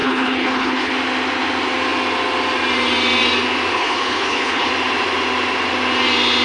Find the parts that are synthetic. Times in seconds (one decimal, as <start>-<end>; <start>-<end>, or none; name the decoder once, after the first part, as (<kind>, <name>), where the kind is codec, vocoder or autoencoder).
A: 0.0-0.9 (codec, HILCodec); 3.7-4.7